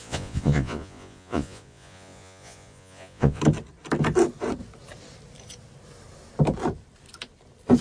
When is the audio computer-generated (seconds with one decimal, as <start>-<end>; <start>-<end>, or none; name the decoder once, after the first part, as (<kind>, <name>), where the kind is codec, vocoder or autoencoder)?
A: 0.0-3.4 (vocoder, Vocos)